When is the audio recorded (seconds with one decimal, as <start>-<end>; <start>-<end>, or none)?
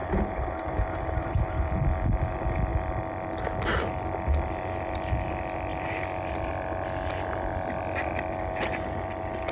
1.8-9.5